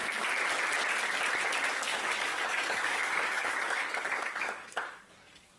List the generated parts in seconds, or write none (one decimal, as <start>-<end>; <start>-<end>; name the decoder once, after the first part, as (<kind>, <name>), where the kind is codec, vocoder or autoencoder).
1.9-5.6 (codec, DAC)